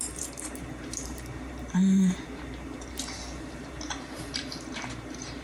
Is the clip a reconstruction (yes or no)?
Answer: yes